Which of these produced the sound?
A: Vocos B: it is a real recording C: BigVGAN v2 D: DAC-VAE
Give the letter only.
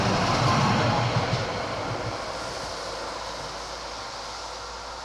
B